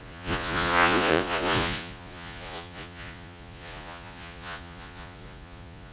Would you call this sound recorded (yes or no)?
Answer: no